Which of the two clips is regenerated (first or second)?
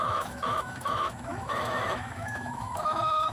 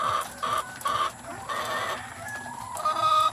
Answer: first